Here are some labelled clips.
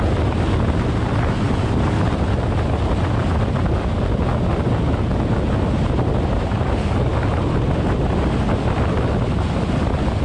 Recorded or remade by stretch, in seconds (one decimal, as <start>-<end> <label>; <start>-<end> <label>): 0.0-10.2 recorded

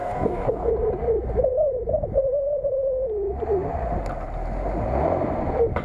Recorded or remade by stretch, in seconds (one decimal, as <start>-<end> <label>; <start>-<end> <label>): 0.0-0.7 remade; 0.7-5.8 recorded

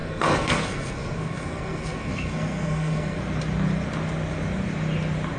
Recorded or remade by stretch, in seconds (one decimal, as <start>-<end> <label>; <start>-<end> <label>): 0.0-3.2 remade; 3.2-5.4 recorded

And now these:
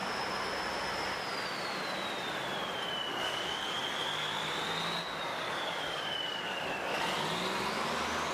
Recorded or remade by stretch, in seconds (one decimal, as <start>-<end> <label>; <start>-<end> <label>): 0.0-3.1 recorded; 3.1-3.8 remade; 3.8-5.3 recorded; 5.3-7.0 remade; 7.0-8.3 recorded

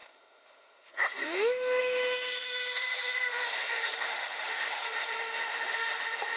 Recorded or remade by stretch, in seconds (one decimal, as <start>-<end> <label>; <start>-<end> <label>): 0.0-6.4 remade

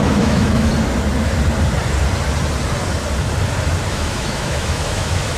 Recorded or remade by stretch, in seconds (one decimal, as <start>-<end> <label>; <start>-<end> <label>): 0.0-0.7 remade; 0.7-3.9 recorded; 3.9-5.4 remade

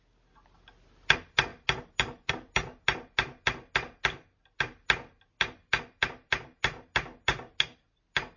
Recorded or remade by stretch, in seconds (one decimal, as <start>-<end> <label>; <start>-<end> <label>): 0.0-8.4 recorded